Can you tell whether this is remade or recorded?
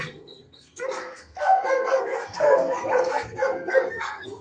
remade